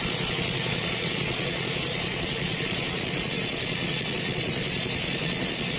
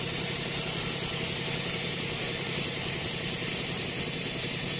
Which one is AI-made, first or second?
first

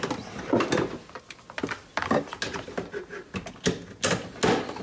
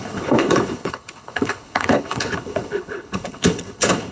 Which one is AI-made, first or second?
second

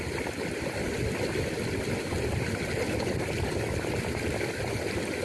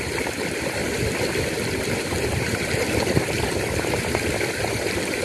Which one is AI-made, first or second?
second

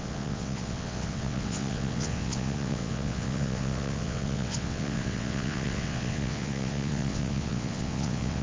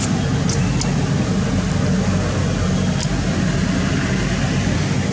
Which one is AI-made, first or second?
first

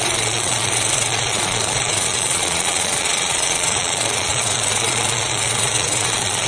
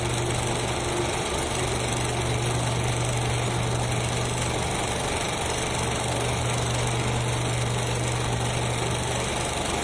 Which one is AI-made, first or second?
first